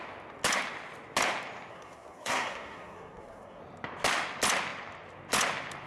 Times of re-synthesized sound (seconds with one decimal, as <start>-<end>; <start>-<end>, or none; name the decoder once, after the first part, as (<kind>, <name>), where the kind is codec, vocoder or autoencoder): 1.7-3.6 (codec, SNAC)